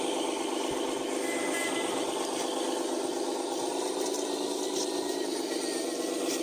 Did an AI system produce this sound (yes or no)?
no